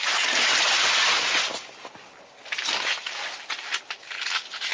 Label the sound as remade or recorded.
recorded